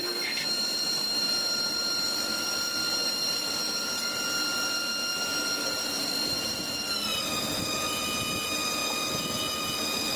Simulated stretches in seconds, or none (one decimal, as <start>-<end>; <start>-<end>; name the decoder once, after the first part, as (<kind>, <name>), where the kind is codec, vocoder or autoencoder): none